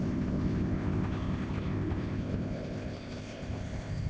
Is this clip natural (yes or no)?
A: no